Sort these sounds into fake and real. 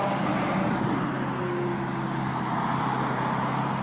real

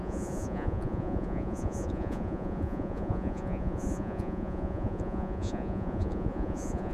fake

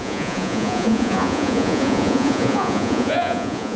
fake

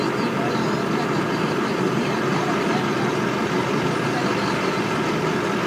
real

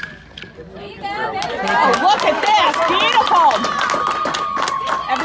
real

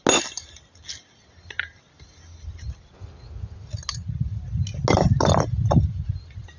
real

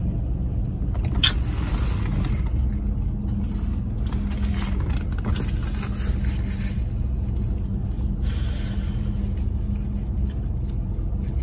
real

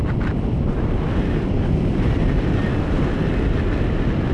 real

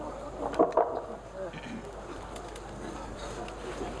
real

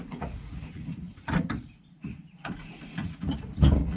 fake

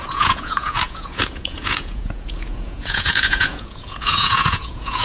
fake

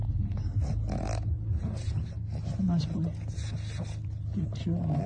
real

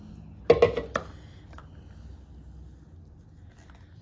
real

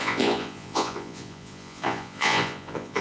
fake